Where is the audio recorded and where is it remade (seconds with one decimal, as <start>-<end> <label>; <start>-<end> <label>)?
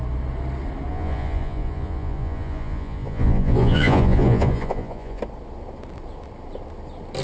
0.0-0.9 recorded; 0.9-5.2 remade; 5.2-7.2 recorded